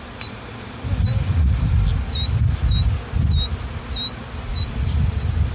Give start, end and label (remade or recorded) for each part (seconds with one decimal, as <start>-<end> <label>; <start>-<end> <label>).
0.0-4.5 recorded; 4.5-5.5 remade